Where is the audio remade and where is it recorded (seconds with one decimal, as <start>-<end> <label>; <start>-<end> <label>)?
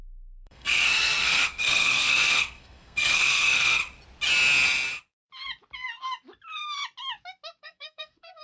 0.0-3.8 remade; 3.8-7.6 recorded; 7.6-8.4 remade